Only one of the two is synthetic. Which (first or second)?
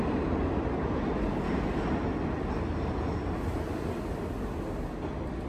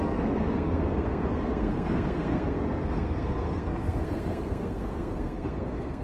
second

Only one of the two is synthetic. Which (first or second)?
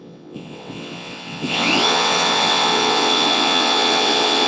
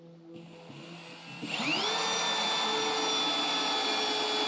first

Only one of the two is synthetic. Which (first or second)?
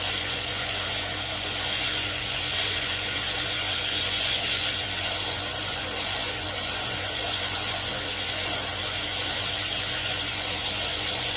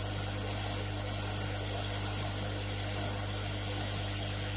first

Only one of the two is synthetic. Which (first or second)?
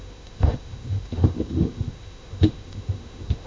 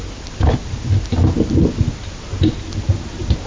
first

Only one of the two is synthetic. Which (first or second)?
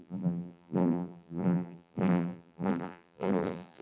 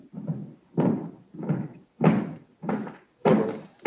first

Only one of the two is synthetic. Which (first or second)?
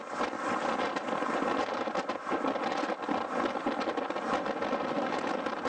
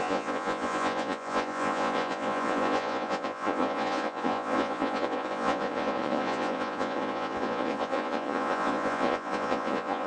second